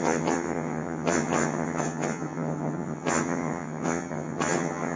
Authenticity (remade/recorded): remade